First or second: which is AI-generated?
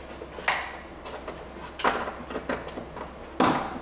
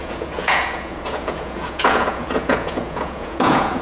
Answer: second